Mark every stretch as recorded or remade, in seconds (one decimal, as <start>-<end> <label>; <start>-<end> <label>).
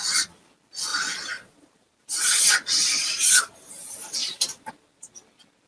0.0-0.9 recorded; 0.9-2.0 remade; 2.0-2.8 recorded; 2.8-3.7 remade; 3.7-4.2 recorded; 4.2-4.7 remade; 4.7-5.7 recorded